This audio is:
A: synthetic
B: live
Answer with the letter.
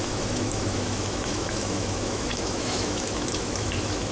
A